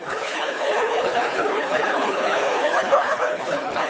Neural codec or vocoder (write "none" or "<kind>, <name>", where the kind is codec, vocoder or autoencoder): codec, HILCodec